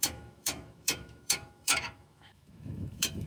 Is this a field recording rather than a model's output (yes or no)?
no